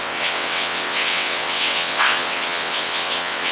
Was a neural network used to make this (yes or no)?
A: yes